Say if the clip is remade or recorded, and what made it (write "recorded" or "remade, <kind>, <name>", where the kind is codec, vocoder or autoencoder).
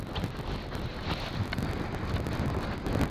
recorded